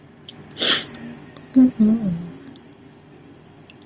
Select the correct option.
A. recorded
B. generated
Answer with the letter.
A